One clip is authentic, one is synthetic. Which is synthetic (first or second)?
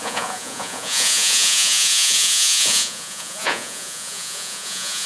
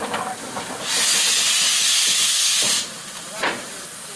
first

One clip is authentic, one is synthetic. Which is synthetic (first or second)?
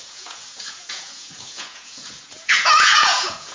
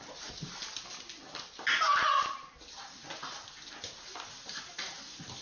first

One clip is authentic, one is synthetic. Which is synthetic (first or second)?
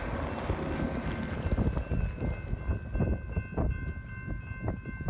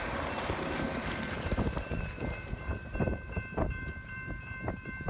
second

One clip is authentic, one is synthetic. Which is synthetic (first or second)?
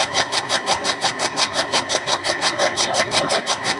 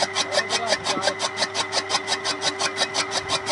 first